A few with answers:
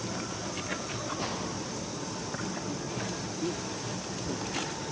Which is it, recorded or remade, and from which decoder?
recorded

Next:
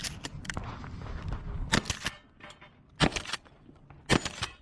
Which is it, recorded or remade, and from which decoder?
recorded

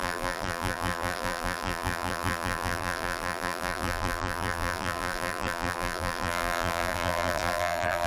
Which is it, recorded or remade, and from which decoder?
remade, vocoder, BigVGAN v2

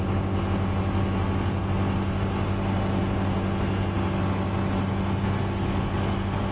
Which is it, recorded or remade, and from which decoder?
recorded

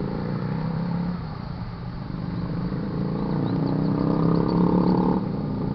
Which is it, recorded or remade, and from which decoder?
remade, vocoder, BigVGAN v2